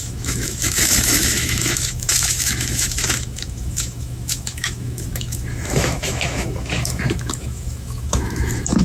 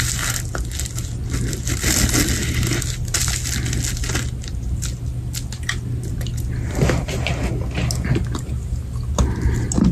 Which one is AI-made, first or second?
first